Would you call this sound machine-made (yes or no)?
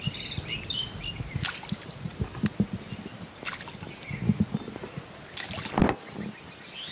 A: no